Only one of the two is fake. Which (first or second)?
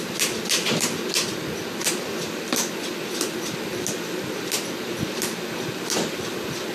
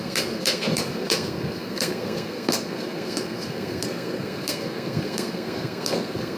second